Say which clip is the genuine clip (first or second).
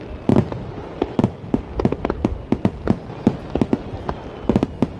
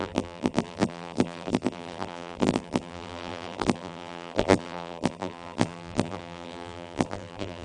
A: first